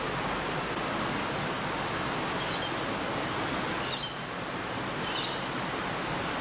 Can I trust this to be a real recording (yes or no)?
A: yes